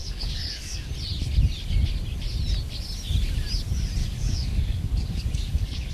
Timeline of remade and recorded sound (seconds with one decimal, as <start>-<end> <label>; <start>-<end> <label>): 0.0-0.9 remade; 0.9-4.0 recorded; 4.0-5.9 remade